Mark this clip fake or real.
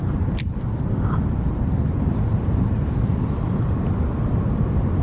fake